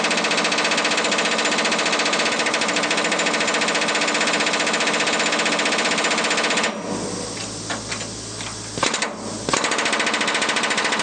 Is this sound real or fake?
real